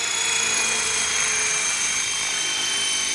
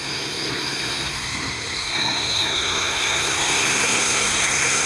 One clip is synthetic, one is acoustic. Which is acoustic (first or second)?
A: first